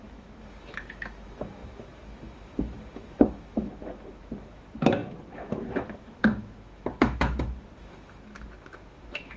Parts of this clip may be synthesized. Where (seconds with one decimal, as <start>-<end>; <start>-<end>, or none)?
0.0-9.4